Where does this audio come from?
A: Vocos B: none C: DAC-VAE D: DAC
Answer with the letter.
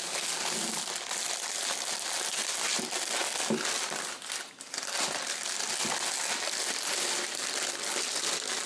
B